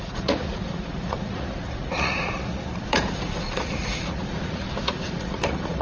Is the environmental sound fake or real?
fake